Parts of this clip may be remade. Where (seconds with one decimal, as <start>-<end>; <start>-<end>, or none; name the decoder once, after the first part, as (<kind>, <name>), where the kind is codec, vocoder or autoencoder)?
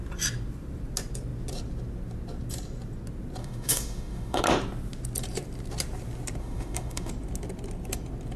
3.4-4.4 (autoencoder, DAC-VAE); 6.4-7.1